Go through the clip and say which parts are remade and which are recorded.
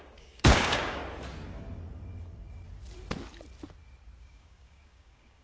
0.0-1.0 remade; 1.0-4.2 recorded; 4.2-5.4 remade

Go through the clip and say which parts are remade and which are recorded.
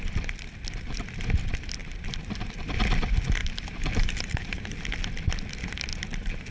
0.0-1.8 recorded; 1.8-2.5 remade; 2.5-3.4 recorded; 3.4-4.8 remade; 4.8-6.5 recorded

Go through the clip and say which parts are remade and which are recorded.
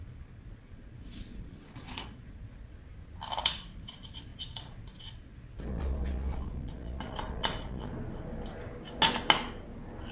0.0-2.8 remade; 2.8-3.4 recorded; 3.4-7.9 remade; 7.9-10.1 recorded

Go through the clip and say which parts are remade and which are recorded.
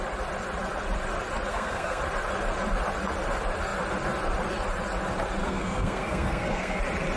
0.0-1.5 recorded; 1.5-2.0 remade; 2.0-5.4 recorded; 5.4-6.8 remade; 6.8-7.2 recorded